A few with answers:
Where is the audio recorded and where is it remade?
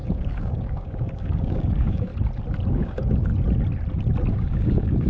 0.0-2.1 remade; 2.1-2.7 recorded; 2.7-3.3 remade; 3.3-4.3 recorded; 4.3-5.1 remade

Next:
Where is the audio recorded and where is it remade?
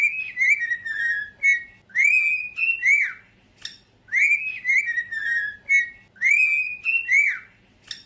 0.0-8.1 recorded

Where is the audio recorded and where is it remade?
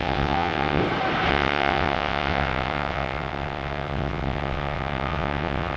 0.0-0.8 remade; 0.8-1.3 recorded; 1.3-5.8 remade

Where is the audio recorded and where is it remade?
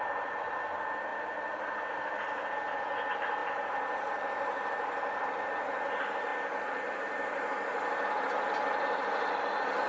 0.0-1.1 recorded; 1.1-2.4 remade; 2.4-3.4 recorded; 3.4-5.4 remade; 5.4-9.9 recorded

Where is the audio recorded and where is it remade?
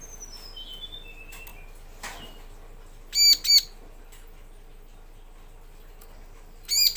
0.0-7.0 recorded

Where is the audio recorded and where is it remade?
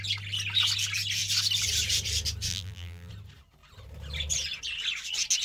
0.0-2.5 recorded; 2.5-3.1 remade; 3.1-5.4 recorded